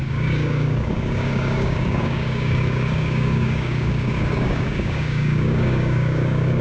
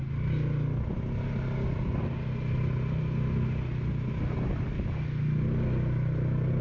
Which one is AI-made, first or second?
first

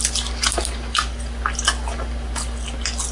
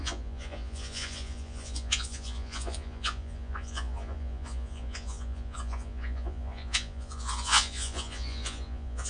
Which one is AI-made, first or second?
second